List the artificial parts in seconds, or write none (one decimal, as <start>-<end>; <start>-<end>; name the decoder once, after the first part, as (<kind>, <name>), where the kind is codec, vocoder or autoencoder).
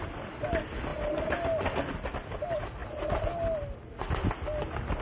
none